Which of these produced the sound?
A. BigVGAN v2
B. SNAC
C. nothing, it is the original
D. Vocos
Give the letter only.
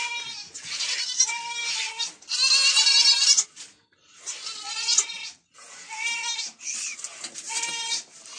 C